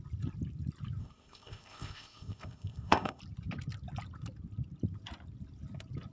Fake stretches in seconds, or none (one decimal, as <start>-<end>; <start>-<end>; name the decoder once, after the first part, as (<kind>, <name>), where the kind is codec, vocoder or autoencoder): 1.0-3.2 (codec, ZipCodec)

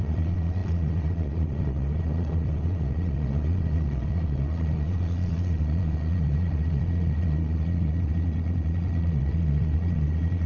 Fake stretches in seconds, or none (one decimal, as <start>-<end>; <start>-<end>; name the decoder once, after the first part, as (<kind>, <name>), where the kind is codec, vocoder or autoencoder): 0.0-10.5 (vocoder, Vocos)

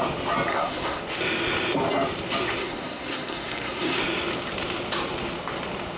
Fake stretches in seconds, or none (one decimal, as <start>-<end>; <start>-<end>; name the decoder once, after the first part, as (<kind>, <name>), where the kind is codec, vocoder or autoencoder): 0.5-1.0 (codec, SNAC); 2.6-4.0

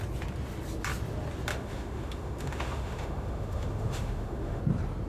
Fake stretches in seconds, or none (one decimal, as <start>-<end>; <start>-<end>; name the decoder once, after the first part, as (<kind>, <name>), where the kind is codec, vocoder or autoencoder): 1.5-4.6 (autoencoder, DAC-VAE)

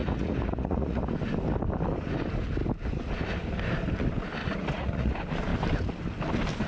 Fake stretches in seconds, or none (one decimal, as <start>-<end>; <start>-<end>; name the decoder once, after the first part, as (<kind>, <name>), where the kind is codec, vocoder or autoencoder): 0.0-1.0 (vocoder, Vocos); 4.4-5.1

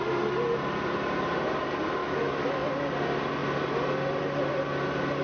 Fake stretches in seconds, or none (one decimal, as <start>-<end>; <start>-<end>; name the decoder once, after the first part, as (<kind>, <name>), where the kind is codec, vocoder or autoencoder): 2.0-2.7 (autoencoder, DAC-VAE)

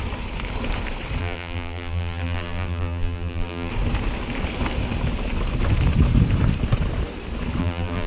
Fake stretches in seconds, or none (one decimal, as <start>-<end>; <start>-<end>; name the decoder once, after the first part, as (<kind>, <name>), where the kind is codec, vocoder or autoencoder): 1.2-3.7 (vocoder, BigVGAN v2); 7.6-8.1